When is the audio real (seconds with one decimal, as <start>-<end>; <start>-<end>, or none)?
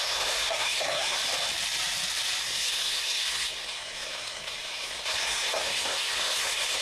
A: 1.2-2.4